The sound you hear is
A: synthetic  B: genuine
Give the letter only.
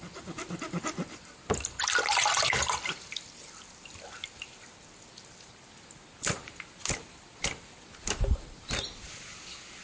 B